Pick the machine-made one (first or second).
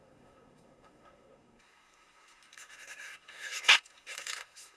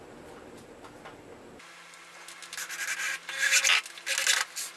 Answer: first